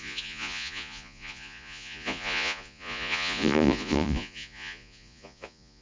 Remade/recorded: remade